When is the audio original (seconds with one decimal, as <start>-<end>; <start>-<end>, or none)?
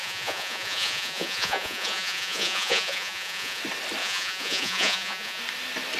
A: 3.6-4.0; 5.4-6.0